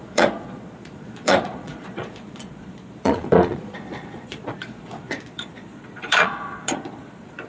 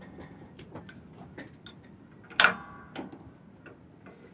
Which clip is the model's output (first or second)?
first